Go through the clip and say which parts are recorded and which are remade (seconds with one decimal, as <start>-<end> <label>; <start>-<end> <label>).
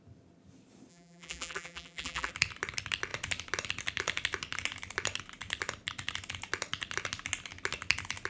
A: 0.0-0.9 recorded; 0.9-2.3 remade; 2.3-8.3 recorded